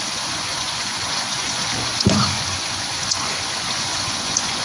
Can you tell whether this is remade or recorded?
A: remade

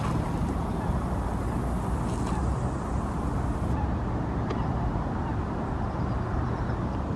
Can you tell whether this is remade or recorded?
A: recorded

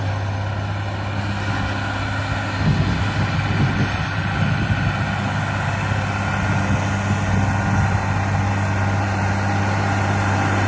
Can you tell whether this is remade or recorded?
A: recorded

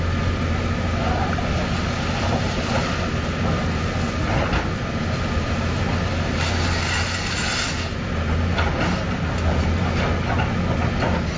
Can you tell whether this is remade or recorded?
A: recorded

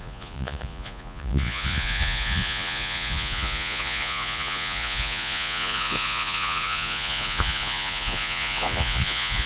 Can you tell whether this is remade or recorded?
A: remade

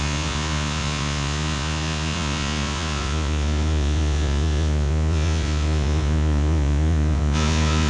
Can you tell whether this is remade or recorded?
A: remade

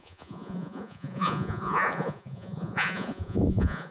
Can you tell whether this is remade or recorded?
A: remade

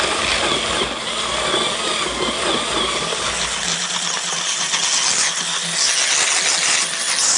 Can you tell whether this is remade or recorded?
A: recorded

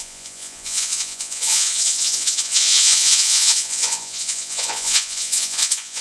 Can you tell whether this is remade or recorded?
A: remade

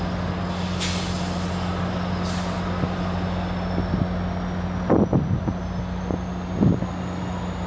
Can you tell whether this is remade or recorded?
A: recorded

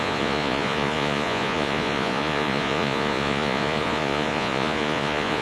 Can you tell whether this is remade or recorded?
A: remade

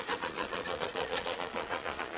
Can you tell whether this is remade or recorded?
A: remade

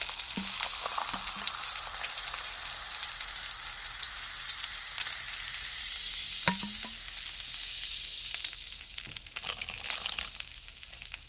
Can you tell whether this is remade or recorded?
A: recorded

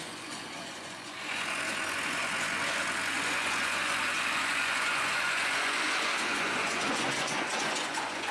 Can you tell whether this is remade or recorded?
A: remade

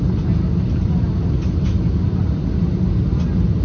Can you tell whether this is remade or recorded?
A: recorded